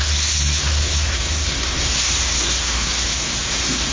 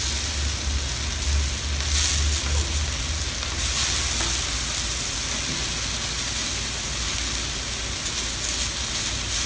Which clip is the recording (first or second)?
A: second